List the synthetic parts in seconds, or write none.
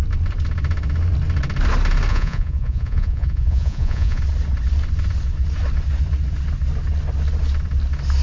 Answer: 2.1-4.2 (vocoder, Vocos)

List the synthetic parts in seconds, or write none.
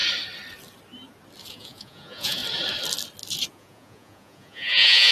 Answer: 1.5-2.4 (vocoder, Vocos); 3.5-5.1